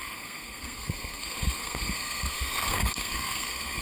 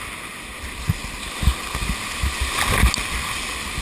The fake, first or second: first